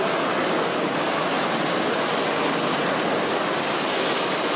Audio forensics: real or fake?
real